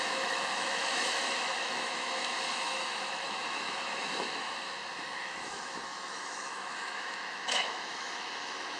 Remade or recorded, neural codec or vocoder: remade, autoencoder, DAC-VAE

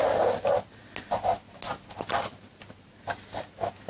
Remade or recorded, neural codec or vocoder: recorded